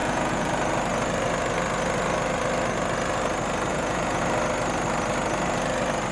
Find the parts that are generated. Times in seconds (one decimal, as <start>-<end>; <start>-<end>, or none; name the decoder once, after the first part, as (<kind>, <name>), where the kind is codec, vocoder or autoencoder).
0.0-0.5 (vocoder, Vocos); 3.7-4.2